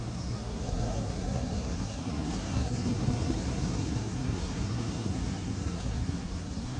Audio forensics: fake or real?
fake